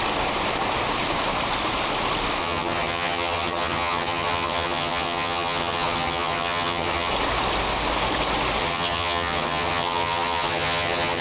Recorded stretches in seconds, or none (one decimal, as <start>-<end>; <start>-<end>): 0.0-2.4; 7.1-8.6